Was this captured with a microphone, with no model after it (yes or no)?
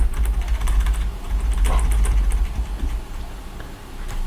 yes